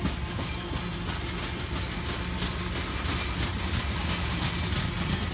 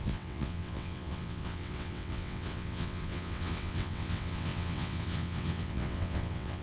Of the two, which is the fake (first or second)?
second